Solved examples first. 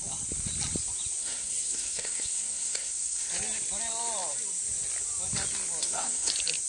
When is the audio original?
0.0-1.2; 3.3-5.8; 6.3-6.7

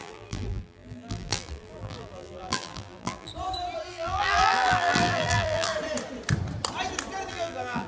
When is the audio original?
3.3-3.9; 5.7-7.3